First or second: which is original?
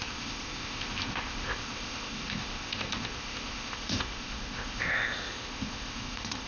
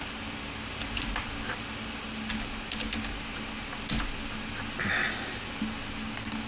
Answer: second